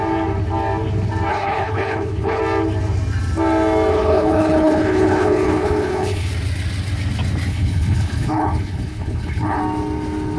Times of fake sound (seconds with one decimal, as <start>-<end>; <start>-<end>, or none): 1.3-2.4; 3.9-6.3; 7.5-9.6